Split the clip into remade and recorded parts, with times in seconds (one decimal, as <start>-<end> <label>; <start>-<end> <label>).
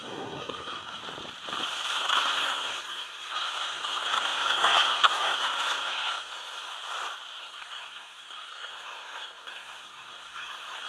0.0-1.0 remade; 1.0-1.9 recorded; 1.9-6.7 remade; 6.7-7.4 recorded; 7.4-10.9 remade